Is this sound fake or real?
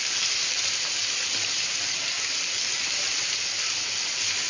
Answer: fake